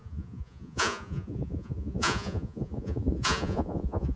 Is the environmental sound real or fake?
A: fake